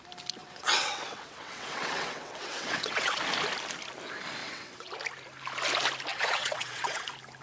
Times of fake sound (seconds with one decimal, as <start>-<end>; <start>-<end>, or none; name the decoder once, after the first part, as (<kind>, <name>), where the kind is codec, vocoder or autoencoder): 0.4-3.2 (vocoder, WaveNeXt); 4.4-4.9; 6.1-7.0